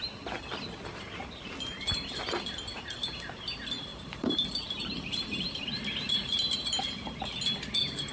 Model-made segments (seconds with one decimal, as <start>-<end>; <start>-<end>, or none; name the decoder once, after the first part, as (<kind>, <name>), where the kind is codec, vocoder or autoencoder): 3.9-7.4 (vocoder, BigVGAN v2)

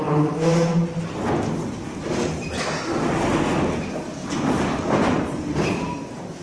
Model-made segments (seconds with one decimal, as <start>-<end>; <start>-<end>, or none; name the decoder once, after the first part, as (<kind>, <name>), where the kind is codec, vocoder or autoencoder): 0.0-0.7 (vocoder, BigVGAN v2); 4.3-6.4

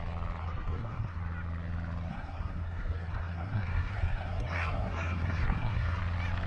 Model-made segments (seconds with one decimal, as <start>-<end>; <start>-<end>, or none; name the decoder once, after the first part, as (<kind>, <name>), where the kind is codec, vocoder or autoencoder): 0.4-1.2 (codec, SNAC); 2.1-6.0

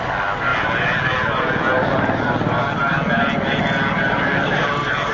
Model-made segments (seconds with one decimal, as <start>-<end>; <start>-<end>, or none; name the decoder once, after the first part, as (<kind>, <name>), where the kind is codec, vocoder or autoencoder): none

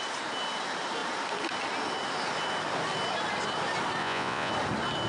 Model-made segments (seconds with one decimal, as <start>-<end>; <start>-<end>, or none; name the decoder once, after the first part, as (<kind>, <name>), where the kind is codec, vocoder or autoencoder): 4.0-4.5 (vocoder, Vocos)

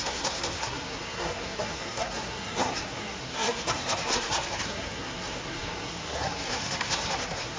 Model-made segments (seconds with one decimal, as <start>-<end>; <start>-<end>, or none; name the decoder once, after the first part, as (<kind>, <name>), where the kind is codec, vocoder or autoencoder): 0.0-7.6 (codec, SNAC)